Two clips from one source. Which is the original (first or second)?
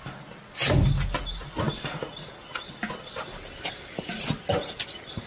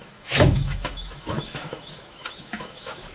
first